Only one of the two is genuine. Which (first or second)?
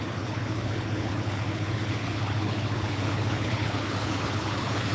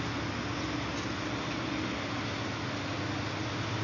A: second